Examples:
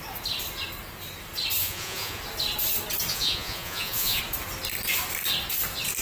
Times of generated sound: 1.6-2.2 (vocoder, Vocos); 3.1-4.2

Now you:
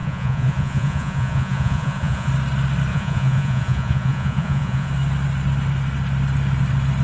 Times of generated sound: 0.0-2.3 (vocoder, Vocos); 2.9-4.9

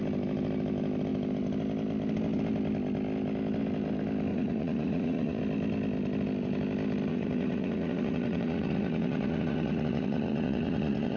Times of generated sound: 4.3-5.4 (vocoder, Vocos); 7.1-11.2

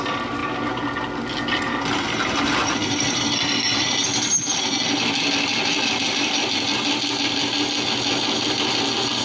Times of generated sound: none

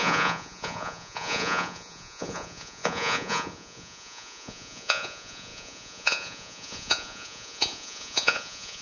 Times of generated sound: 0.0-8.8 (vocoder, Vocos)

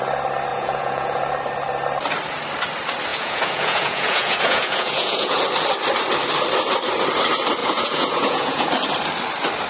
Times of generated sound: 0.5-1.2 (vocoder, Vocos); 3.1-5.4; 7.6-8.7

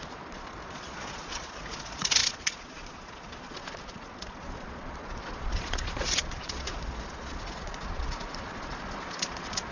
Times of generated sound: 0.0-9.7 (vocoder, Vocos)